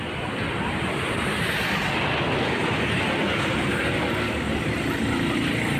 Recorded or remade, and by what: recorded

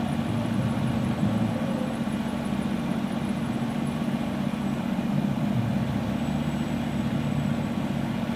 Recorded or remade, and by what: recorded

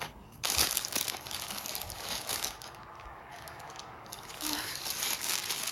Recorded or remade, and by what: remade, codec, DAC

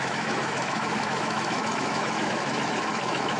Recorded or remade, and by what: remade, autoencoder, DAC-VAE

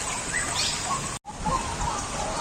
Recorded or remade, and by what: recorded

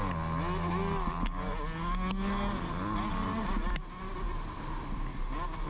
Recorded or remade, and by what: recorded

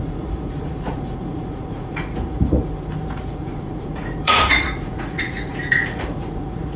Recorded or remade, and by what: remade, vocoder, Vocos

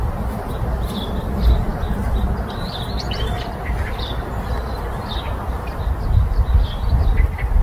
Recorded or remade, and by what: remade, vocoder, BigVGAN v2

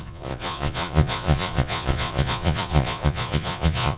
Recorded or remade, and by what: remade, vocoder, Vocos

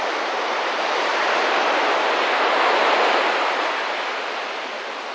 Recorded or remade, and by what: remade, vocoder, BigVGAN v2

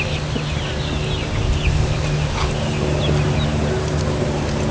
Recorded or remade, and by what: recorded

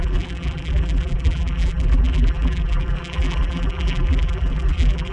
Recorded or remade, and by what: remade, vocoder, BigVGAN v2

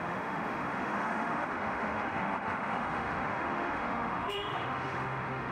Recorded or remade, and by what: remade, autoencoder, DAC-VAE